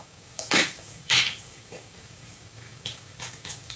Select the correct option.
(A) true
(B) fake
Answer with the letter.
B